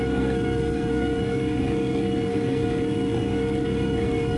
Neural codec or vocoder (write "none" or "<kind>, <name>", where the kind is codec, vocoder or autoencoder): codec, SNAC